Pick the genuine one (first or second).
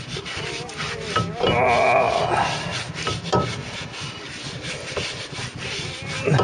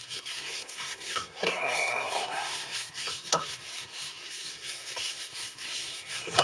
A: first